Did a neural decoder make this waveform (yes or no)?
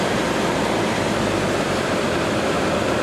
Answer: no